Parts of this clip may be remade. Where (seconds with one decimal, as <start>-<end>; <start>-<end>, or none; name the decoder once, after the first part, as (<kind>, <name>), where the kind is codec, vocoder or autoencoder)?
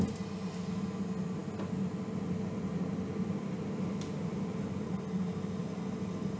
none